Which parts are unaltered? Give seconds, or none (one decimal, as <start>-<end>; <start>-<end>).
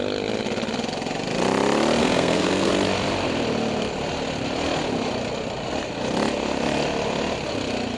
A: 0.0-2.0; 2.7-8.0